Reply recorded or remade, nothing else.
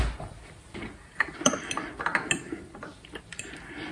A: recorded